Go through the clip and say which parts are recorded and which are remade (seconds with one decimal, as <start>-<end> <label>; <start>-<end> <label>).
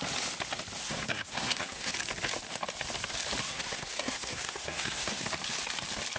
0.0-0.8 recorded; 0.8-1.9 remade; 1.9-3.4 recorded; 3.4-5.2 remade; 5.2-6.2 recorded